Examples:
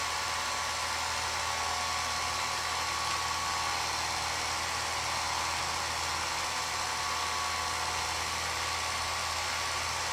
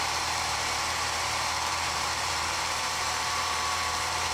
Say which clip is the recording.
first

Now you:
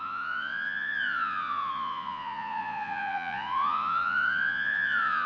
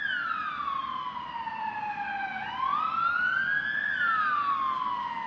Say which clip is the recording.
second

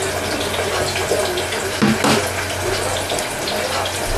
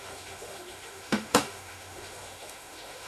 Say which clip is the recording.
first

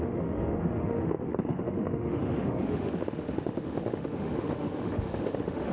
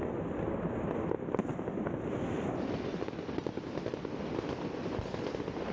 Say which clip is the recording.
second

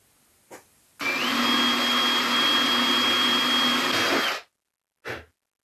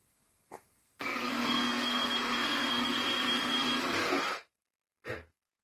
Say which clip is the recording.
first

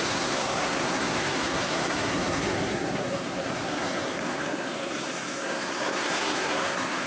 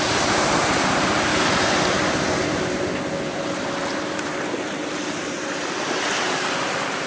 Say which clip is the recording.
second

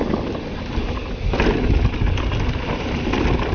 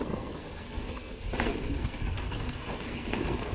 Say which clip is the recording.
first